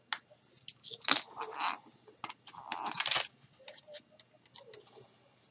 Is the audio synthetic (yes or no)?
no